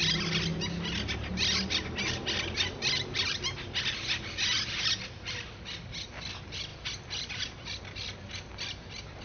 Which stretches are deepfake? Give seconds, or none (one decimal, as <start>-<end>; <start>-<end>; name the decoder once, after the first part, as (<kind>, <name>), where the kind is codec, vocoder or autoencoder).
none